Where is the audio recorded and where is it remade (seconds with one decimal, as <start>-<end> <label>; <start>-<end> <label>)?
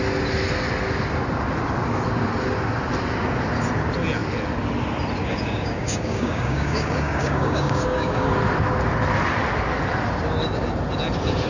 0.0-5.2 recorded; 5.2-8.3 remade; 8.3-11.5 recorded